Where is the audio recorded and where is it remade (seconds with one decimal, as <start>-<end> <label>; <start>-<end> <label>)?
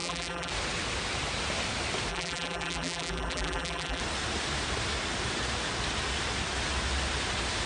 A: 0.0-0.5 remade; 0.5-2.1 recorded; 2.1-4.0 remade; 4.0-7.7 recorded